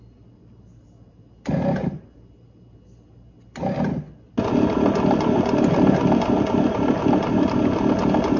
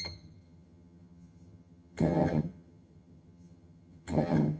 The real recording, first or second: first